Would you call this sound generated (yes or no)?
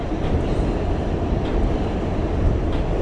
yes